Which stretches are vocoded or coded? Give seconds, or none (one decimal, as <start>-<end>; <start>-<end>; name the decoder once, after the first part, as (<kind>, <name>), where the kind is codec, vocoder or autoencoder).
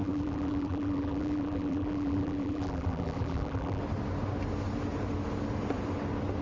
0.0-3.8 (vocoder, BigVGAN v2)